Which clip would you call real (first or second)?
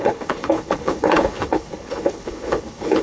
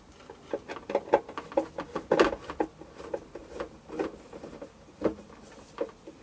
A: second